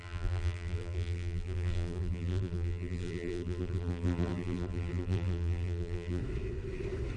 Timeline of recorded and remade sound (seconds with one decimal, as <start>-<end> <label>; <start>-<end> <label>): 0.0-6.2 remade; 6.2-7.2 recorded